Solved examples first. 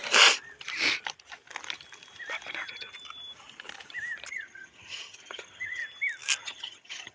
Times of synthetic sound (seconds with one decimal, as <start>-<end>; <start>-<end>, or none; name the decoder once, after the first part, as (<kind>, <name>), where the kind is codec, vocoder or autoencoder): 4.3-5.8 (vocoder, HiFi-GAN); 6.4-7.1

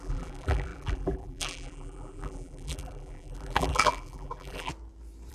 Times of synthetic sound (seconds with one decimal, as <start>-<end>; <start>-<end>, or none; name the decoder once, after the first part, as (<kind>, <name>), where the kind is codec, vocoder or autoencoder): 0.0-4.7 (vocoder, BigVGAN v2)

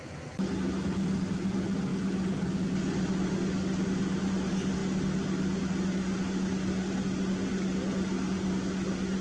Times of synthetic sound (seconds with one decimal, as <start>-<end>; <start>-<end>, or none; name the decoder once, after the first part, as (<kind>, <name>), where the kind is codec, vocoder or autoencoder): none

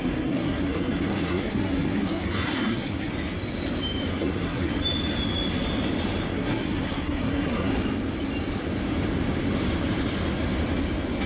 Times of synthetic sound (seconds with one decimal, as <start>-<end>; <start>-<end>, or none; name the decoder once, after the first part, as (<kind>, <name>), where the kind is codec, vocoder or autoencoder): 0.0-3.1 (codec, SNAC); 4.1-4.7; 6.3-7.7

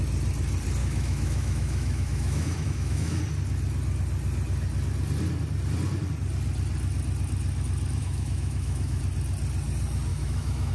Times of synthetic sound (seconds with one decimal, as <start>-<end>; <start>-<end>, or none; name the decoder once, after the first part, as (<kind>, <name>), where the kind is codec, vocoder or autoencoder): 0.8-3.2 (autoencoder, DAC-VAE); 8.0-9.0; 10.1-10.7